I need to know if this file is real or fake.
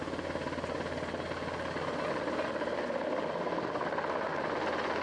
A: real